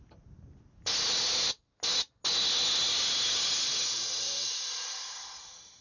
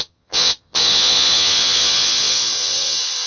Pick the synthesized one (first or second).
second